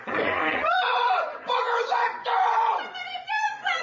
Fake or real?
fake